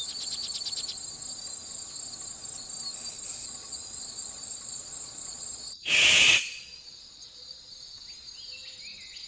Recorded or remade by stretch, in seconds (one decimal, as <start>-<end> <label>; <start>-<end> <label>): 0.0-3.3 recorded; 3.3-7.7 remade; 7.7-9.3 recorded